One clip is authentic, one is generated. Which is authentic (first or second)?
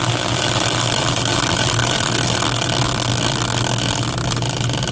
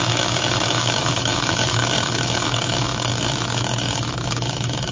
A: first